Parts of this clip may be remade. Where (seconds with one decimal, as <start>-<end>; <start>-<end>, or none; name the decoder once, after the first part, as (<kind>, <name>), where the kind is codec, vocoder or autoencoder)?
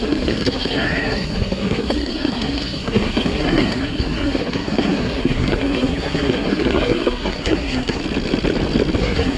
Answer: 0.0-8.0 (codec, SNAC); 9.0-9.4